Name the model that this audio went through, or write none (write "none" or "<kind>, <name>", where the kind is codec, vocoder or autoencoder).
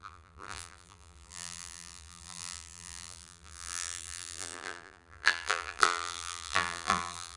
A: vocoder, BigVGAN v2